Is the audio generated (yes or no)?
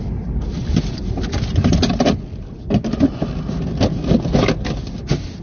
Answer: no